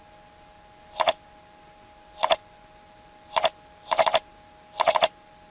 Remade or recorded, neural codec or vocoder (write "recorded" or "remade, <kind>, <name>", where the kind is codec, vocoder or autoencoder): recorded